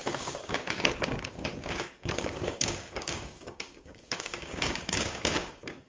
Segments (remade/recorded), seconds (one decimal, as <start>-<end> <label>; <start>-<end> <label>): 0.0-5.9 remade